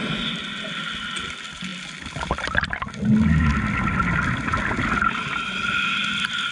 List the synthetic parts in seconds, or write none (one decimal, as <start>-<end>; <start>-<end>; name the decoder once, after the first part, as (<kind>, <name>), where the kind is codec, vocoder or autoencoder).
none